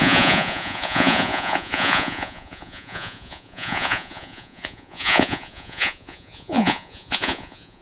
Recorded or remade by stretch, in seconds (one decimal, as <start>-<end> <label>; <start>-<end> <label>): 0.0-7.8 remade